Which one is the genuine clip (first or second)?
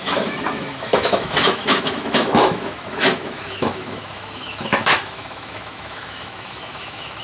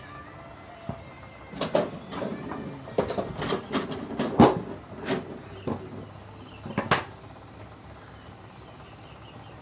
second